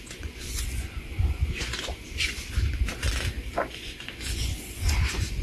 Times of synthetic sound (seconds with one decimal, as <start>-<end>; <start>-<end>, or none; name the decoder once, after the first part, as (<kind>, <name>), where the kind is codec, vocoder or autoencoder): 0.0-2.4 (vocoder, Vocos); 3.7-5.4